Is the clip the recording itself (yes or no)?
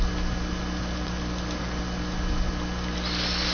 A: yes